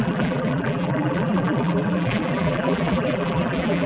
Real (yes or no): no